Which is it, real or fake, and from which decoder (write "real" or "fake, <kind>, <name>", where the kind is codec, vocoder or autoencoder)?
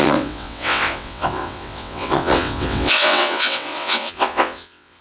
fake, vocoder, WaveNeXt